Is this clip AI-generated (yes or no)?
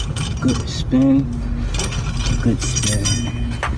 no